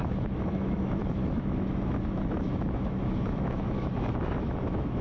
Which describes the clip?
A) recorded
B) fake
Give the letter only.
B